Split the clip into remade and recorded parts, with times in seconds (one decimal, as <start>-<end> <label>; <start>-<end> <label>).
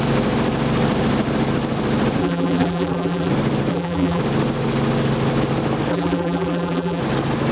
0.0-2.2 recorded; 2.2-3.3 remade; 3.3-3.7 recorded; 3.7-4.2 remade; 4.2-5.9 recorded; 5.9-7.0 remade; 7.0-7.5 recorded